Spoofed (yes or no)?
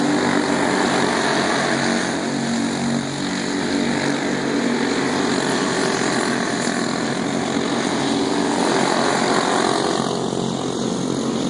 no